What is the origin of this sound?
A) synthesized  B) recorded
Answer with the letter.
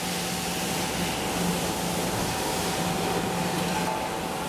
B